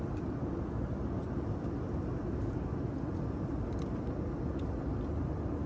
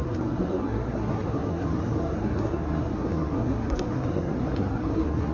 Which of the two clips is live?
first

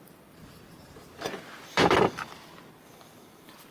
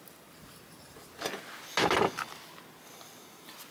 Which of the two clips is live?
second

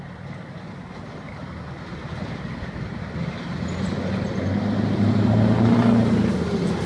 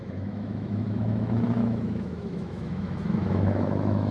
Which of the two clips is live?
first